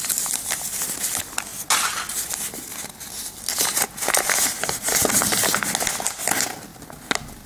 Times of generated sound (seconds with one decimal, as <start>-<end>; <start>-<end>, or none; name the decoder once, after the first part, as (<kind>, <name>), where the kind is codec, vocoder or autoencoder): 1.5-2.6 (vocoder, BigVGAN v2)